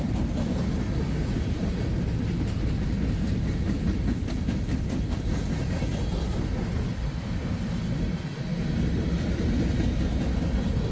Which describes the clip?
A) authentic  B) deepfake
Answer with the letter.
A